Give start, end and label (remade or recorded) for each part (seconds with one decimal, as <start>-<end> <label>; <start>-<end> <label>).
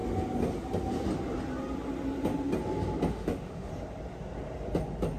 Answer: 0.0-3.1 recorded; 3.1-3.7 remade; 3.7-5.2 recorded